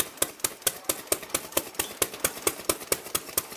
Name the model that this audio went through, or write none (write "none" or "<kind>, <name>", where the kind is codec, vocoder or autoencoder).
none